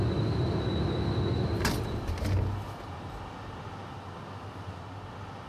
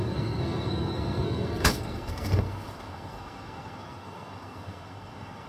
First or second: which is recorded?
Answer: first